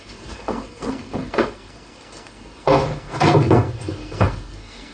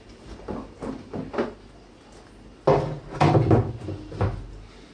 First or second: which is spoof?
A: first